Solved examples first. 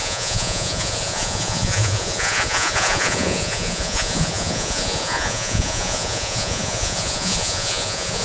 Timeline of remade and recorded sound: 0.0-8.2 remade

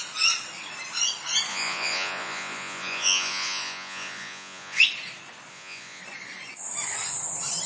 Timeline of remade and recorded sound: 0.0-1.5 recorded; 1.5-4.8 remade; 4.8-5.5 recorded; 5.5-6.0 remade; 6.0-7.7 recorded

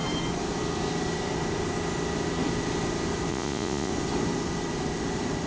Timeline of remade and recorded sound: 0.0-3.3 recorded; 3.3-3.9 remade; 3.9-5.5 recorded

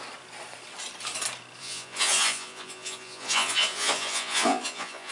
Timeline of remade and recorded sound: 0.0-1.6 recorded; 1.6-5.1 remade

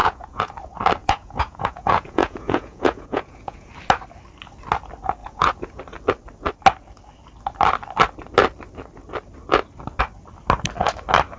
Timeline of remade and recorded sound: 0.0-0.5 remade; 0.5-1.0 recorded; 1.0-3.7 remade; 3.7-5.2 recorded; 5.2-5.8 remade; 5.8-11.4 recorded

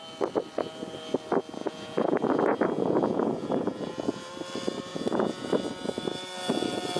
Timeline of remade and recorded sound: 0.0-1.6 recorded; 1.6-4.3 remade; 4.3-4.9 recorded; 4.9-5.5 remade; 5.5-7.0 recorded

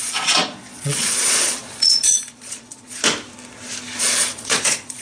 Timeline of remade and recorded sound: 0.0-3.0 remade; 3.0-4.0 recorded; 4.0-5.0 remade